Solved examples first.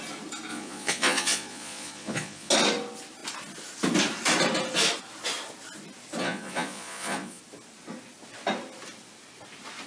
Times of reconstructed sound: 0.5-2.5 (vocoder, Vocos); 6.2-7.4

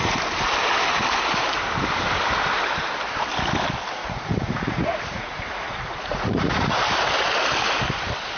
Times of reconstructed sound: 4.0-6.8 (vocoder, Vocos)

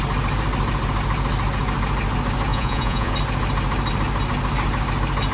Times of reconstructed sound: 2.5-3.1 (vocoder, Vocos)

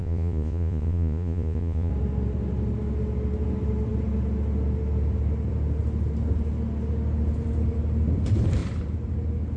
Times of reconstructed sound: 0.0-1.9 (vocoder, Vocos)

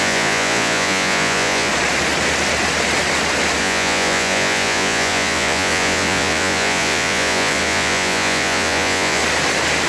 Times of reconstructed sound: 0.0-1.7 (vocoder, Vocos); 3.6-9.2

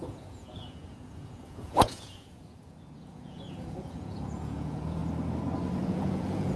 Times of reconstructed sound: 0.0-5.0 (vocoder, Vocos); 5.9-6.6

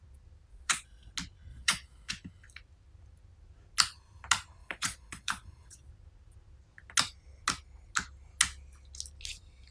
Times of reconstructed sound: 0.5-1.1 (vocoder, Vocos); 1.5-2.1; 4.6-5.9